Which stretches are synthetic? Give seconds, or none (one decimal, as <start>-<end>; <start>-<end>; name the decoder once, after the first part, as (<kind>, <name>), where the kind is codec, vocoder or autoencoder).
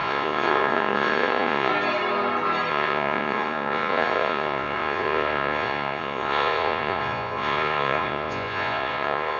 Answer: 0.0-1.7 (vocoder, Vocos); 2.7-9.4